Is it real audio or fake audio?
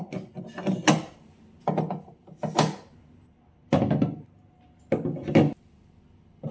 real